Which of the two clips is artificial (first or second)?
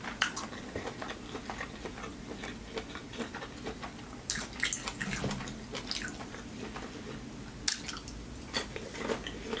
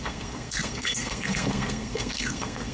second